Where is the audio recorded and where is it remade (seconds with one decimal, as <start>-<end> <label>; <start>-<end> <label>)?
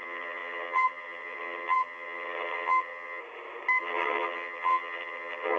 0.0-3.2 remade; 3.2-3.8 recorded; 3.8-5.6 remade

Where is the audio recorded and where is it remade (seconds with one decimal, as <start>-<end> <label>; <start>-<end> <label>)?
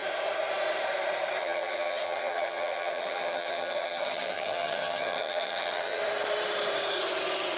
0.0-1.4 recorded; 1.4-6.0 remade; 6.0-7.6 recorded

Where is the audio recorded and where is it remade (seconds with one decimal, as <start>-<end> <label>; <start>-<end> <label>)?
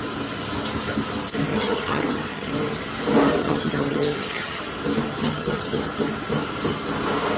0.0-1.5 recorded; 1.5-2.5 remade; 2.5-3.4 recorded; 3.4-4.6 remade; 4.6-5.2 recorded; 5.2-5.8 remade; 5.8-7.4 recorded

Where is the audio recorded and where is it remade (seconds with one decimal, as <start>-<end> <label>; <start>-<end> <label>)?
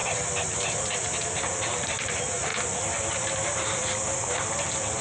0.0-5.0 recorded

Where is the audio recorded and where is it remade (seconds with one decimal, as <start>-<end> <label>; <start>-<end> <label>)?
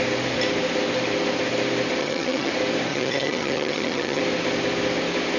0.0-2.0 recorded; 2.0-2.5 remade; 2.5-2.9 recorded; 2.9-4.2 remade; 4.2-5.4 recorded